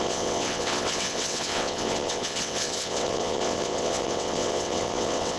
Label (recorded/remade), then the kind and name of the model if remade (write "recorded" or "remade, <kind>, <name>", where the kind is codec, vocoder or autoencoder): remade, vocoder, WaveNeXt